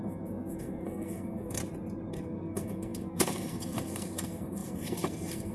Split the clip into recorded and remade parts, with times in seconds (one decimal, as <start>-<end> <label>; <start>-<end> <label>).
0.0-1.6 remade; 1.6-2.1 recorded; 2.1-5.5 remade